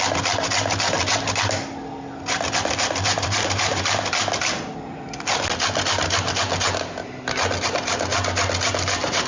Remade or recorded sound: recorded